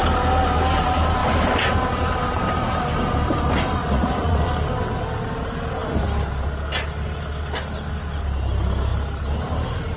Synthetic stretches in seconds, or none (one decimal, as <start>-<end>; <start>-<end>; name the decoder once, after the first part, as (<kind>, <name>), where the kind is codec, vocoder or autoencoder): 3.8-4.5 (vocoder, Vocos)